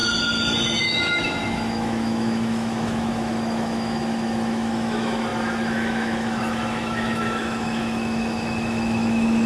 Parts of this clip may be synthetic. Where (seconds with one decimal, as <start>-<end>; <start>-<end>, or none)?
0.8-9.5